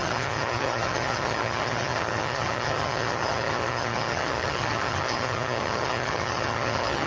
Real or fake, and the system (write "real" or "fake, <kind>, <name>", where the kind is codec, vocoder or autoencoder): fake, vocoder, HiFi-GAN